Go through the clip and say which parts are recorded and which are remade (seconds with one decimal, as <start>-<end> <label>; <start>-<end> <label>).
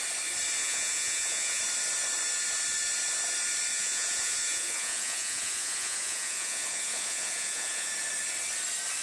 0.0-0.6 recorded; 0.6-1.6 remade; 1.6-3.7 recorded; 3.7-7.9 remade; 7.9-9.0 recorded